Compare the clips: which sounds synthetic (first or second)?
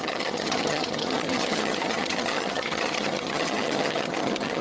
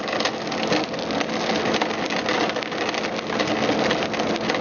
first